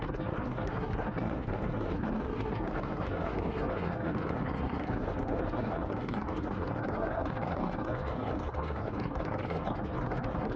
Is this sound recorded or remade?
remade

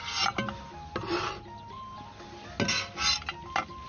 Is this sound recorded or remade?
recorded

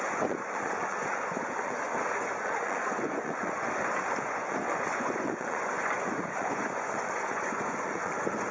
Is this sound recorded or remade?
remade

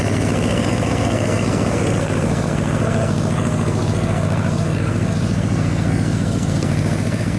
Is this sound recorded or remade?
remade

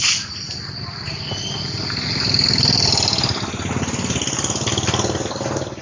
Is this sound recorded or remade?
recorded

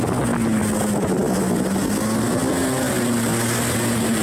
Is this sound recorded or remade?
recorded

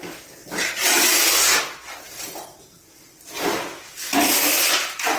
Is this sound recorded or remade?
recorded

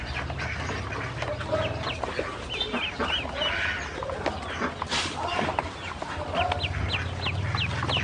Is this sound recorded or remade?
recorded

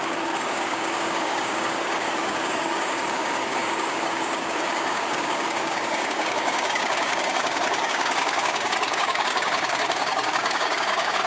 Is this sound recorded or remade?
remade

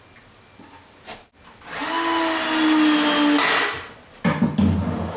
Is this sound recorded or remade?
recorded